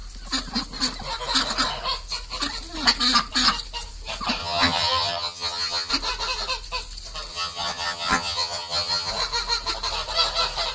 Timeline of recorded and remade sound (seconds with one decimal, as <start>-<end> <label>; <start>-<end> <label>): 0.0-4.4 recorded; 4.4-5.9 remade; 5.9-7.3 recorded; 7.3-9.1 remade; 9.1-10.7 recorded